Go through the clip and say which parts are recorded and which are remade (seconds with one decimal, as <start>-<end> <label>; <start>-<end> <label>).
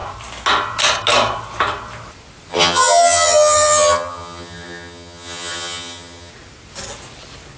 0.0-2.5 recorded; 2.5-6.3 remade; 6.3-7.6 recorded